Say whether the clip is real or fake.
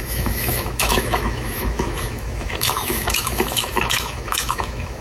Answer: fake